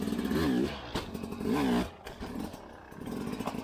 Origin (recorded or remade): recorded